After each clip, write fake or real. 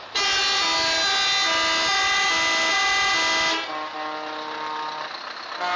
real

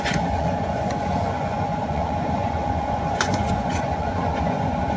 fake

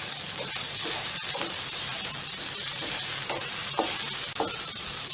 real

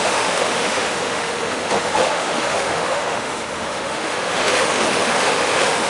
fake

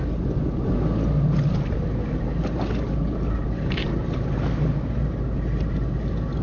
real